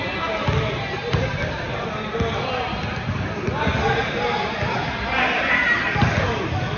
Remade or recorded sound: recorded